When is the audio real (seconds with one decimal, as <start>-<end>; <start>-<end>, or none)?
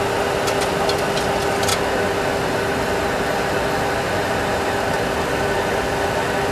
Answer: 0.0-6.5